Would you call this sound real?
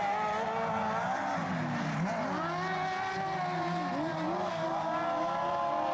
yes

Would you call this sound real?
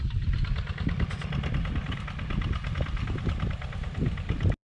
yes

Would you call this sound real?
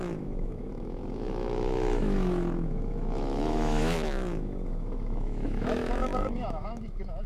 no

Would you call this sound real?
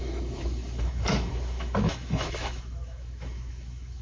no